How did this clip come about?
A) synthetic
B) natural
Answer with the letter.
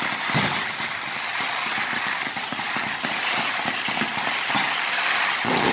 B